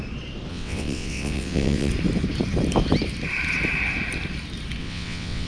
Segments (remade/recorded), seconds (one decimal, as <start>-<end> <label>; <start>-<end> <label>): 0.0-0.5 recorded; 0.5-1.9 remade; 1.9-4.8 recorded; 4.8-5.5 remade